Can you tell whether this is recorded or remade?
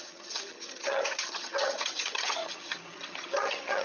remade